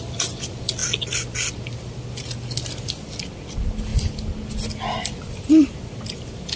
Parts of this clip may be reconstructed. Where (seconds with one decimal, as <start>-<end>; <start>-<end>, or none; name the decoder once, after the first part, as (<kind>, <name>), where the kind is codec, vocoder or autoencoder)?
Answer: none